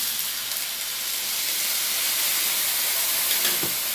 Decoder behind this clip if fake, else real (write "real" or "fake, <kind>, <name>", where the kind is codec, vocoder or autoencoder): real